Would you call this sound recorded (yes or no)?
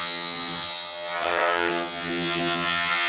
no